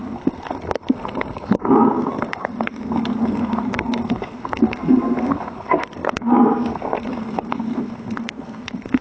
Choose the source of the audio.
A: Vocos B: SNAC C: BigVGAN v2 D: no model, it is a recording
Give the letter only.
B